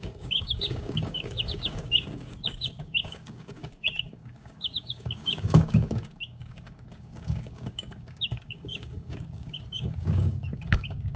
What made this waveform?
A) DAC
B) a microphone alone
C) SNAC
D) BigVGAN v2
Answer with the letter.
A